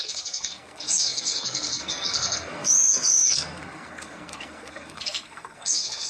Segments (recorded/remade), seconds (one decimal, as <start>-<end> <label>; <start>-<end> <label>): 0.0-6.1 remade